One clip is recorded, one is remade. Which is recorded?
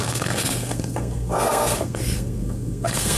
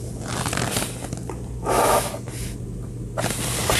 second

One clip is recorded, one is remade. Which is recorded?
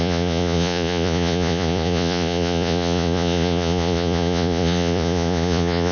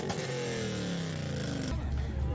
second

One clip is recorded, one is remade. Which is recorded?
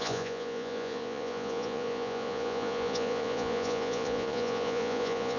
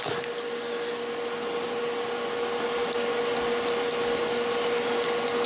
second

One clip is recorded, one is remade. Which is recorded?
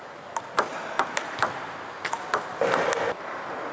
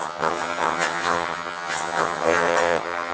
first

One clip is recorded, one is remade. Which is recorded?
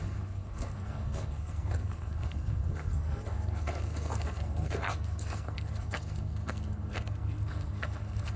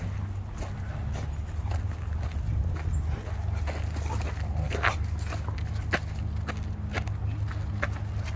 second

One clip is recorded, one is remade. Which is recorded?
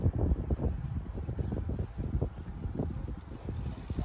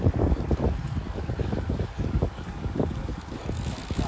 first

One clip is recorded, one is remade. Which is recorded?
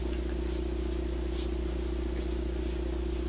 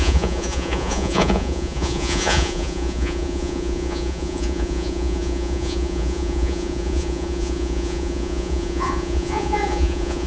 first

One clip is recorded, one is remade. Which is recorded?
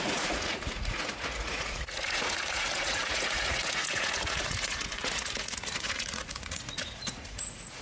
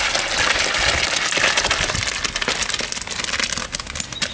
second